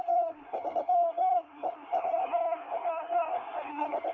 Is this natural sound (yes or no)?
no